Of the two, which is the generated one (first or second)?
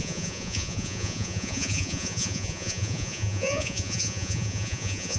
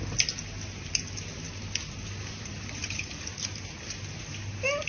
first